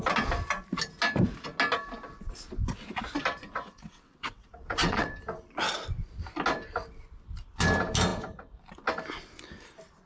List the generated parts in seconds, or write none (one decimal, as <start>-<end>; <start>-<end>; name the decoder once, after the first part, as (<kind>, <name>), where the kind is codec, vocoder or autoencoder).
3.4-5.1 (vocoder, WaveNeXt)